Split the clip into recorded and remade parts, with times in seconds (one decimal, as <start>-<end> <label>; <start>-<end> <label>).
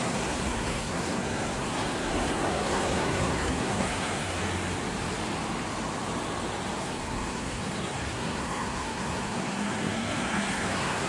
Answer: 0.0-4.4 remade; 4.4-6.8 recorded; 6.8-11.1 remade